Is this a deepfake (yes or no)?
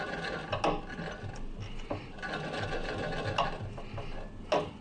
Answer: no